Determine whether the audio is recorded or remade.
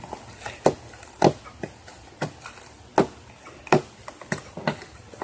recorded